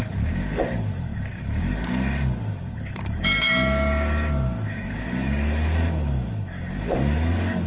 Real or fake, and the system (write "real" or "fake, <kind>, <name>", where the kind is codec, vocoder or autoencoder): fake, codec, DAC